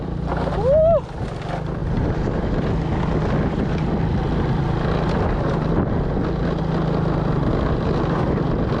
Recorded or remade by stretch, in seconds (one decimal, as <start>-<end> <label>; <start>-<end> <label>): 0.0-8.8 recorded